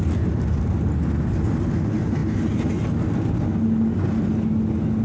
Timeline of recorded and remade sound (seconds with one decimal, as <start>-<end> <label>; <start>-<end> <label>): 0.0-5.0 recorded